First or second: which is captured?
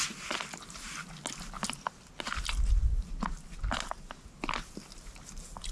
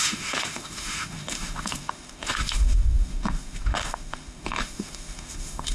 first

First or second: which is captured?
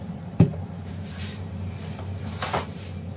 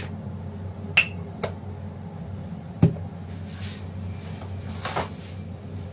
second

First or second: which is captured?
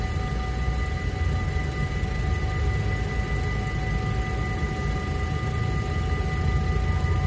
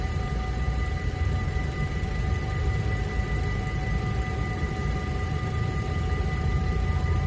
first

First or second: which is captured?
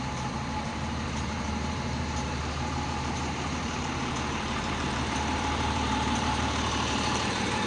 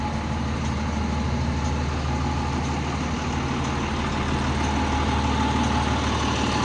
second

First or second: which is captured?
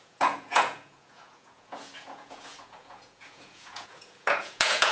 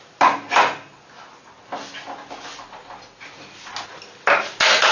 second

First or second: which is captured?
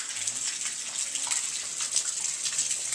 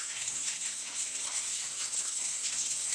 first